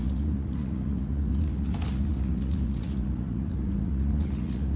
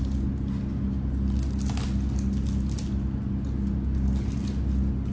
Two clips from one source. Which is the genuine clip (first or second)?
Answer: second